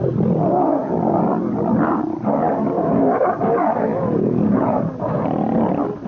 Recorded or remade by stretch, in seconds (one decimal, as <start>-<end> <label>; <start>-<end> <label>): 0.0-3.9 recorded; 3.9-4.8 remade; 4.8-6.1 recorded